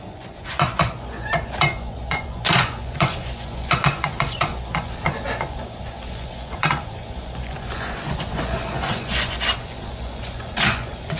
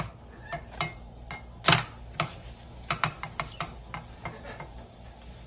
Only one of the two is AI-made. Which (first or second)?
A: first